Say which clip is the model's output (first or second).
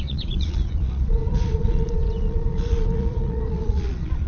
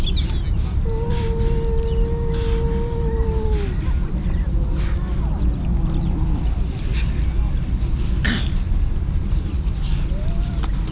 first